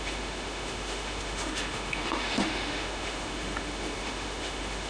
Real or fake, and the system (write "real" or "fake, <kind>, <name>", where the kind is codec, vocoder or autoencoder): fake, autoencoder, DAC-VAE